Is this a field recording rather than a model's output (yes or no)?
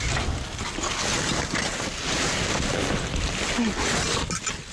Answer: yes